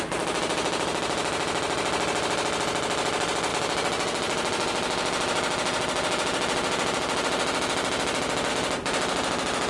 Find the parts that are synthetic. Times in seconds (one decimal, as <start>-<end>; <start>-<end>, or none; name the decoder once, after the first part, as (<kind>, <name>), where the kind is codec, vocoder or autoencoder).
none